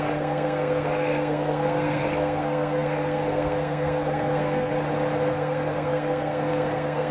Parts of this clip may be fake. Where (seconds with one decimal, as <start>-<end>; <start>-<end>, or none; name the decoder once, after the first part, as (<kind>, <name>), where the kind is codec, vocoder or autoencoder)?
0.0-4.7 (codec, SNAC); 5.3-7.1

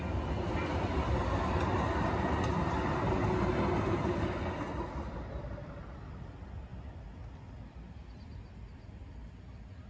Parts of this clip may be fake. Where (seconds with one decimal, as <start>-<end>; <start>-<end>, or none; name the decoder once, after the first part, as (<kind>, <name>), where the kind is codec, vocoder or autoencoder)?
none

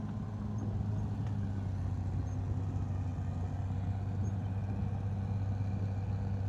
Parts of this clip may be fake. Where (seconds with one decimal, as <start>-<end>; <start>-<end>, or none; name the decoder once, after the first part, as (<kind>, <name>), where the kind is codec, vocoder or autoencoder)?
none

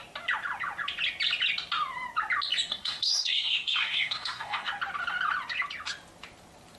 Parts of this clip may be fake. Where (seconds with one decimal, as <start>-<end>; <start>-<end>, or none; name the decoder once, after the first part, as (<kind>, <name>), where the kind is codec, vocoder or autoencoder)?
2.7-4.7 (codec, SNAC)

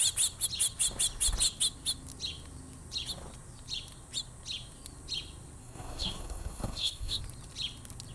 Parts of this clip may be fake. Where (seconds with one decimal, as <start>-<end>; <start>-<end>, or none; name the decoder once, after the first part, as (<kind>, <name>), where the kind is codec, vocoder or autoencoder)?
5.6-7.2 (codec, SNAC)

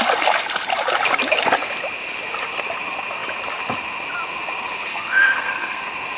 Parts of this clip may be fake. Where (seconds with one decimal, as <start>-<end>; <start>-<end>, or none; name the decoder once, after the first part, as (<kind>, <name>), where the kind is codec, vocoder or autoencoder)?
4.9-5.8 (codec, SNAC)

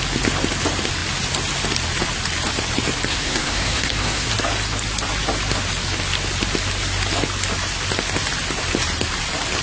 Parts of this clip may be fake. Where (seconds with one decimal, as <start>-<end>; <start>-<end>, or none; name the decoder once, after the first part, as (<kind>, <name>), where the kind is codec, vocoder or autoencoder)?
3.1-4.3 (codec, SNAC)

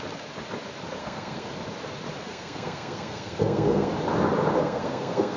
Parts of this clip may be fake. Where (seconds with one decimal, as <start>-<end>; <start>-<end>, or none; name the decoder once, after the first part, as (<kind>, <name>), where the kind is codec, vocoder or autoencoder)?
1.0-1.5 (codec, SNAC); 2.2-3.9; 4.6-5.4